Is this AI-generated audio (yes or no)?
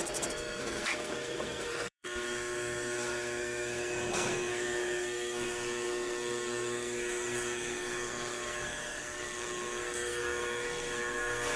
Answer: yes